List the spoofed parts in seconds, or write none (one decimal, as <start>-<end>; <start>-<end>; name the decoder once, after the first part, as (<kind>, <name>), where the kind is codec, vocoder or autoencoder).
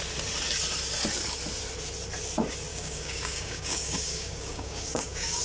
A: 2.7-5.4 (codec, DAC)